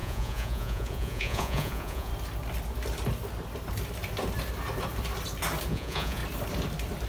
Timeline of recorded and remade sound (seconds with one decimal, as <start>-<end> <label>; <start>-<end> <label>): 0.0-2.1 remade; 2.1-5.7 recorded; 5.7-6.2 remade; 6.2-7.1 recorded